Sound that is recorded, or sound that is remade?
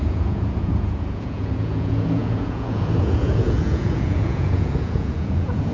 remade